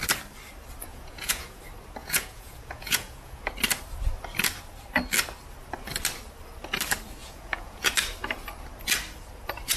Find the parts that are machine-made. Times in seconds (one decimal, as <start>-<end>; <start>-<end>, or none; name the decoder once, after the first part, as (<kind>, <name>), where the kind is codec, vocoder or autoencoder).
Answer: 0.9-1.6 (vocoder, Vocos); 2.0-3.4; 7.2-7.9